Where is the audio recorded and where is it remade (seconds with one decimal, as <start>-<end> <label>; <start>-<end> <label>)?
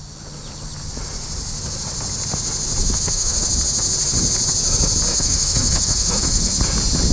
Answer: 0.0-2.8 recorded; 2.8-3.5 remade; 3.5-5.1 recorded; 5.1-6.6 remade; 6.6-7.1 recorded